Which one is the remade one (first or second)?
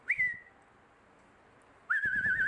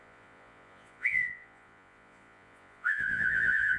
second